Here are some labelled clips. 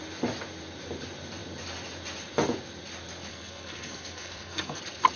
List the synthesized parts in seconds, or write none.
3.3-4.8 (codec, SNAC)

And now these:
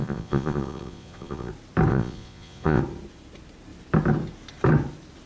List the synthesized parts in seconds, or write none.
0.0-1.5 (vocoder, Vocos); 1.9-2.8